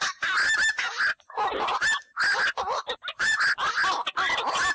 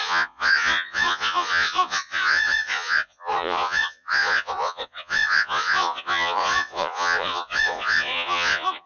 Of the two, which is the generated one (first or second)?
second